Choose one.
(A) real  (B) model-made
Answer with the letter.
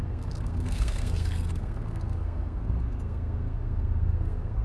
B